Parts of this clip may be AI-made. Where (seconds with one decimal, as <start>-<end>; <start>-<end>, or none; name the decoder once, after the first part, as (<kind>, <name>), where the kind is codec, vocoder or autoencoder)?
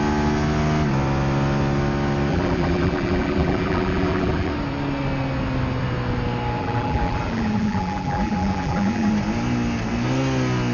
2.3-4.5 (vocoder, BigVGAN v2); 6.6-9.1